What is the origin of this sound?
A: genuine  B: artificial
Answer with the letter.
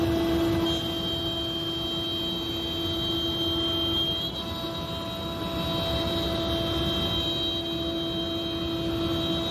A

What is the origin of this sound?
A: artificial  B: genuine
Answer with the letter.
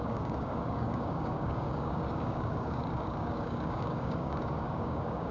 A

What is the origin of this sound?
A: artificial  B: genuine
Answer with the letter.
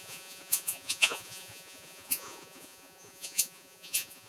A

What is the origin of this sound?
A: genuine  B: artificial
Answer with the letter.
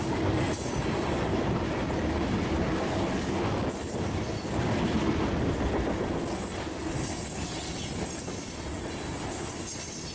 A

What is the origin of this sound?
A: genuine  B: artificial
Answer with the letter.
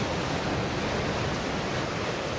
A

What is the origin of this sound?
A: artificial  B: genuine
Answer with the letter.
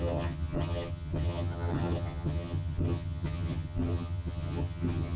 A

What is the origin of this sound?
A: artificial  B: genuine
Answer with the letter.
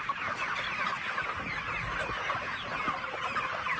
B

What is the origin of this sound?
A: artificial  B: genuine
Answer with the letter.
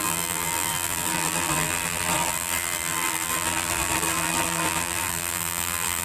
A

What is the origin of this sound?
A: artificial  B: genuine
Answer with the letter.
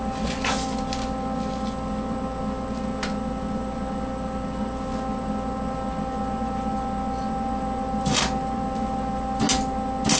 B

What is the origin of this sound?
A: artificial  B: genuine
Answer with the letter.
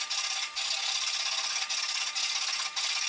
B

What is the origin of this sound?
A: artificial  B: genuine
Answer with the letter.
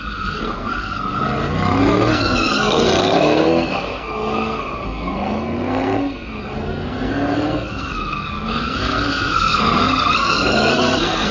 A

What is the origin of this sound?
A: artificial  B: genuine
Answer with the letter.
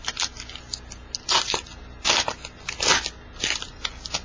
B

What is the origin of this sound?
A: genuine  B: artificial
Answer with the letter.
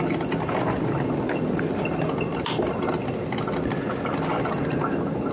A